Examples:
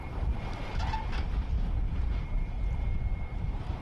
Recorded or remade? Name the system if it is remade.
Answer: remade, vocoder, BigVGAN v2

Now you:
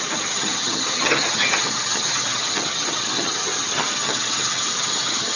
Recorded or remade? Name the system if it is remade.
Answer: remade, vocoder, HiFi-GAN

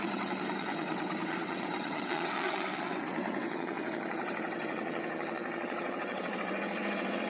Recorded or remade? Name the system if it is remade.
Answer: remade, vocoder, WaveNeXt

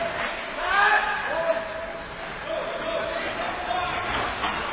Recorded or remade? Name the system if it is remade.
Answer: recorded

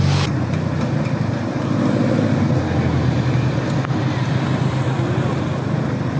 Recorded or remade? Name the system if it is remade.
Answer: recorded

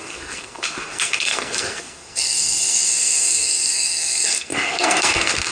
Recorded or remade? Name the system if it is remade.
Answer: remade, codec, SNAC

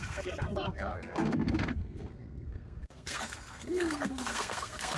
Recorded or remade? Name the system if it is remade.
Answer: remade, codec, SNAC